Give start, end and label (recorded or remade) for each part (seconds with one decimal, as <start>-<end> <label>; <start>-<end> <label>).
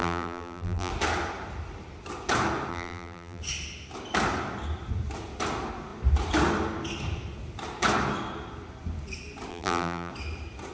0.0-0.9 remade; 0.9-2.7 recorded; 2.7-3.4 remade; 3.4-9.5 recorded; 9.5-10.1 remade; 10.1-10.7 recorded